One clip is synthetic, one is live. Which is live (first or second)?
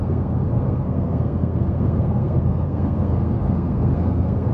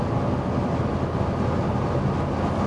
second